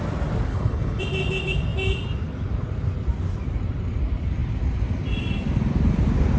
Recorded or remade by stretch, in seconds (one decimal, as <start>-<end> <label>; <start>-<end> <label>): 0.0-0.5 recorded; 0.5-1.0 remade; 1.0-6.4 recorded